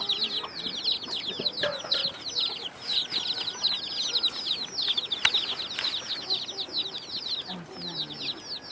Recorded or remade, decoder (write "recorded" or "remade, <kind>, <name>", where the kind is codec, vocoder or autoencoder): recorded